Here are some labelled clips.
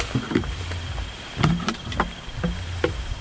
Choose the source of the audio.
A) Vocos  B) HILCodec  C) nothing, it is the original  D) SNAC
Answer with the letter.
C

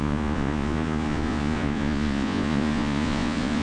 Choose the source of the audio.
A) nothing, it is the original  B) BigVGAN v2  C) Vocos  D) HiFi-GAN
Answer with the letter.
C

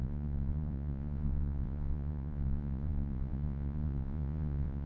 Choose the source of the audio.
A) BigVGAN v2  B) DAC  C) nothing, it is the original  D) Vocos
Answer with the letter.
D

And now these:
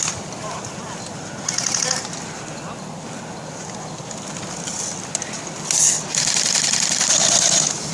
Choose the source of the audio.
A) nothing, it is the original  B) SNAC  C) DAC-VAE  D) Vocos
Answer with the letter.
A